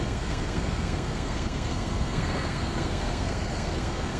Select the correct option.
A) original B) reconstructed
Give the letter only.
B